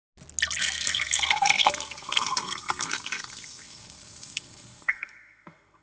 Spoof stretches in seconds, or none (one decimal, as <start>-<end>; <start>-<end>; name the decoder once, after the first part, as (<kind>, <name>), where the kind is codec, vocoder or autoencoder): 0.6-5.8 (codec, SNAC)